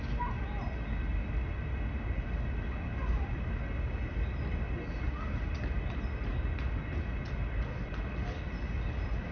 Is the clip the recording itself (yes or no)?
yes